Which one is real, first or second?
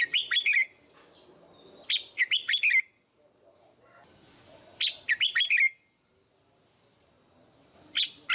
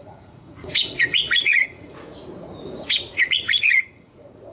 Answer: first